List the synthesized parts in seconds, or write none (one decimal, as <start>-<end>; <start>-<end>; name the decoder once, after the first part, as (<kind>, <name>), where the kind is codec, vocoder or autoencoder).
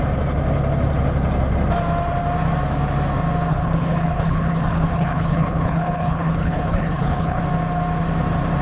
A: 3.5-7.4 (codec, HILCodec)